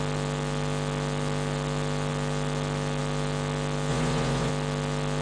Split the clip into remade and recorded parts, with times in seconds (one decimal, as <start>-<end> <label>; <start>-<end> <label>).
0.0-3.9 recorded; 3.9-4.5 remade; 4.5-5.2 recorded